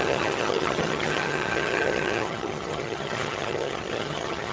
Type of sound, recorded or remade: remade